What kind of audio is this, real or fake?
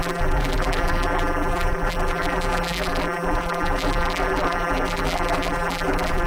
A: fake